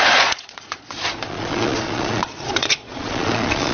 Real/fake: fake